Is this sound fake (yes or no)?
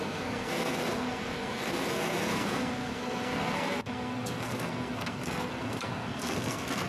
yes